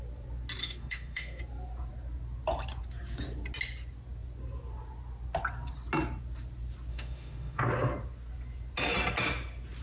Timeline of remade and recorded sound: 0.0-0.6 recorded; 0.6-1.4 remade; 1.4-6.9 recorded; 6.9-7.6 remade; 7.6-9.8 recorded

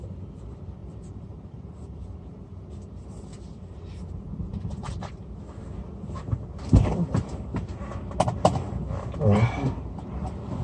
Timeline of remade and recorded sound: 0.0-0.8 recorded; 0.8-5.4 remade; 5.4-10.6 recorded

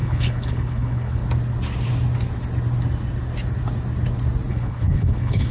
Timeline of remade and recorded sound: 0.0-1.2 remade; 1.2-4.5 recorded; 4.5-5.5 remade

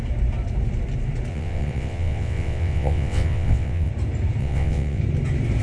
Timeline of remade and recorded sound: 0.0-1.3 recorded; 1.3-3.9 remade; 3.9-4.4 recorded; 4.4-5.0 remade; 5.0-5.6 recorded